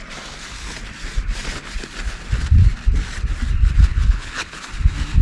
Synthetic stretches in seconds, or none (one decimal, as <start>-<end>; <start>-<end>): 3.9-4.6